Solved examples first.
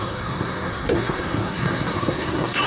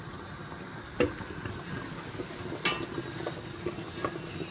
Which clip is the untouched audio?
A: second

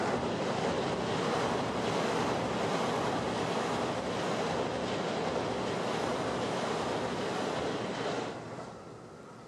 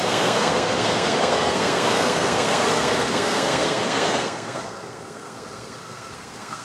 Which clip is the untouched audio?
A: first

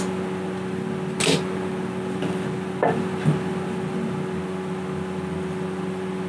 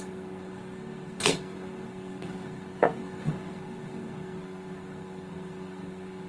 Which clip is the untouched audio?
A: first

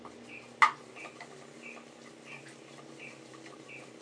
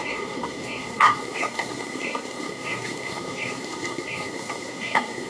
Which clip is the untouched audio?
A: first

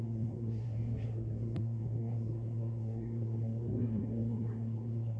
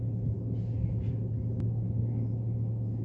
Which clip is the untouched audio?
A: second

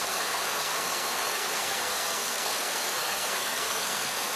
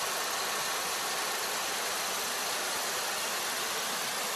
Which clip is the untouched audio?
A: second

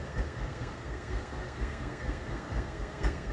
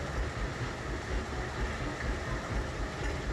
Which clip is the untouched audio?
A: second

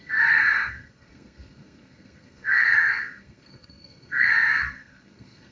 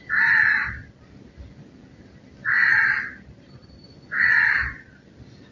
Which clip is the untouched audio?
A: second